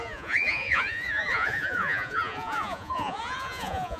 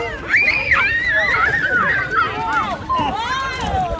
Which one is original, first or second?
second